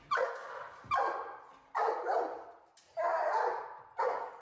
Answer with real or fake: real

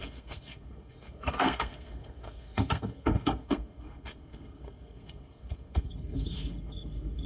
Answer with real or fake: fake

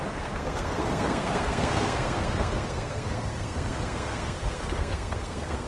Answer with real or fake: fake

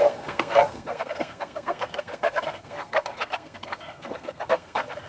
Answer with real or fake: fake